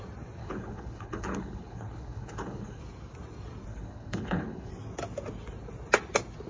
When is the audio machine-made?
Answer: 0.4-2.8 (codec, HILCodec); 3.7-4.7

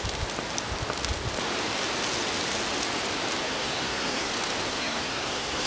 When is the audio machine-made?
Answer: 3.4-4.3 (codec, SNAC); 4.7-5.7

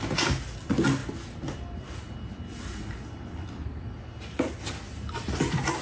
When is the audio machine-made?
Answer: none

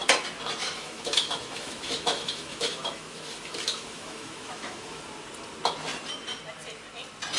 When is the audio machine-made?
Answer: 0.6-5.0 (autoencoder, DAC-VAE)

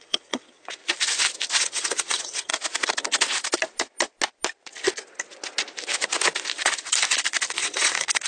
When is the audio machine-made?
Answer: 0.0-0.8 (vocoder, WaveNeXt); 1.6-2.5; 7.5-8.3

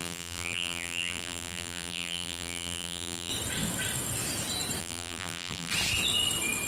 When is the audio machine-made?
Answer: 0.0-3.3 (vocoder, BigVGAN v2); 4.8-5.7